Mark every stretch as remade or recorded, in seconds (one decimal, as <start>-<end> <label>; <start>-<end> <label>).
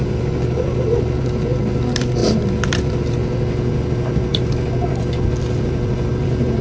0.0-6.6 recorded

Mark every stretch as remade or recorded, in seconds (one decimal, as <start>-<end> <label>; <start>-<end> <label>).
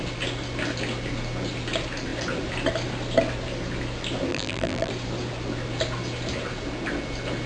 0.0-4.3 recorded; 4.3-4.9 remade; 4.9-7.5 recorded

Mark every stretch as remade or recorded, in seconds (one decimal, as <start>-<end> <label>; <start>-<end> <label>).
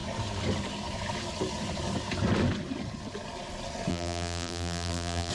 0.0-3.9 recorded; 3.9-5.3 remade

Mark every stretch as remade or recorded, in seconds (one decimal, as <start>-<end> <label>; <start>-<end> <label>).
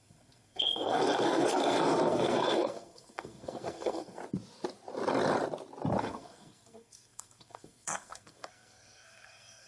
0.0-4.2 remade; 4.2-6.0 recorded; 6.0-9.7 remade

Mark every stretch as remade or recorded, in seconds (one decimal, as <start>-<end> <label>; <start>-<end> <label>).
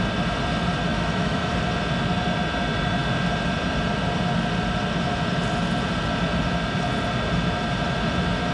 0.0-0.9 recorded; 0.9-1.5 remade; 1.5-8.5 recorded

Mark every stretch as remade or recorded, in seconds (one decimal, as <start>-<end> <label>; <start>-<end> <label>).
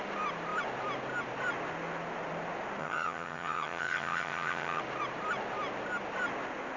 0.0-2.8 recorded; 2.8-4.8 remade; 4.8-6.8 recorded